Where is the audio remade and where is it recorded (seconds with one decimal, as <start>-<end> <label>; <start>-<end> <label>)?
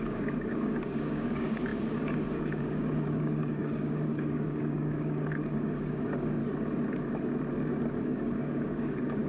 0.0-6.4 remade; 6.4-8.0 recorded; 8.0-9.3 remade